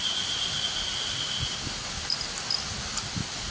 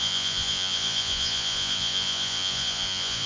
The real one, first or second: first